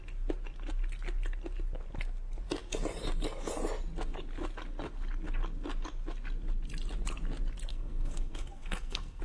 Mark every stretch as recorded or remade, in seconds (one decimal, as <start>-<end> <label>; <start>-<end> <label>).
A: 0.0-7.7 recorded; 7.7-9.2 remade